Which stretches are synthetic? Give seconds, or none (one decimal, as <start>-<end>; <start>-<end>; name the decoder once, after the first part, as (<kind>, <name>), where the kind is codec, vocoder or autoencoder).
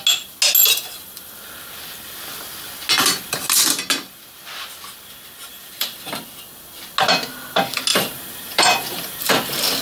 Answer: 0.6-1.3 (vocoder, BigVGAN v2); 5.5-6.2; 7.9-9.3